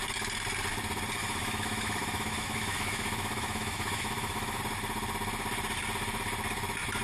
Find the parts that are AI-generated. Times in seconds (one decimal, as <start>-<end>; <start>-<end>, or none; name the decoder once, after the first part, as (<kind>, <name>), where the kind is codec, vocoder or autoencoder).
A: 1.2-4.6 (autoencoder, DAC-VAE)

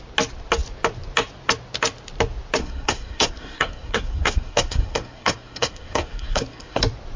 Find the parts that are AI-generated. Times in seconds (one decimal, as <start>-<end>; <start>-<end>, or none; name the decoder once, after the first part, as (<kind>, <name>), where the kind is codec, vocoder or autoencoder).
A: 2.6-6.8 (codec, SNAC)

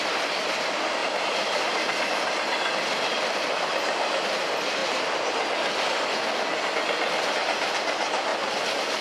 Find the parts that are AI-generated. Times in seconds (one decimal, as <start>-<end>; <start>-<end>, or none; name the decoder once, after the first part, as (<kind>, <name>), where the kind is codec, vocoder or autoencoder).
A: 0.0-4.8 (vocoder, BigVGAN v2); 7.3-8.3

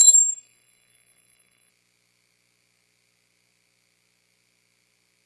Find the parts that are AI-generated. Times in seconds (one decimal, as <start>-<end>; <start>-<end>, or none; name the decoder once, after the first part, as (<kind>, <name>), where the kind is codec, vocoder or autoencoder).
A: 0.0-1.7 (codec, SNAC)

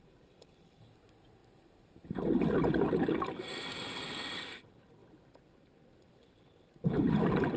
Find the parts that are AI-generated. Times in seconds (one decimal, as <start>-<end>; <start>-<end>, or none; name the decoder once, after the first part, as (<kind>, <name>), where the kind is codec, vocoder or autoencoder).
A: none

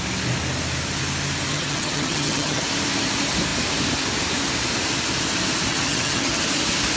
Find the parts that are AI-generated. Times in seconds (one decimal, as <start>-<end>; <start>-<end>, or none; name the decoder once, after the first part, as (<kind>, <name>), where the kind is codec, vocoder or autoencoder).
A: 1.5-2.6 (vocoder, HiFi-GAN); 5.7-6.4